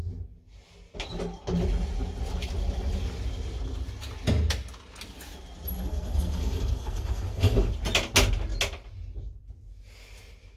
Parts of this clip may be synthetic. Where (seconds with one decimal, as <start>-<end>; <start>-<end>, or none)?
5.9-7.7